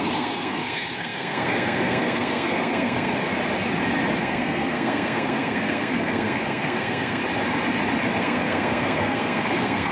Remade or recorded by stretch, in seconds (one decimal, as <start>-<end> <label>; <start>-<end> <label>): 0.0-3.3 remade; 3.3-4.2 recorded; 4.2-7.2 remade; 7.2-8.2 recorded; 8.2-9.9 remade